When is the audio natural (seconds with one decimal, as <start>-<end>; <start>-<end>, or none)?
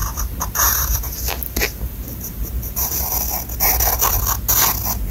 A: 3.1-5.1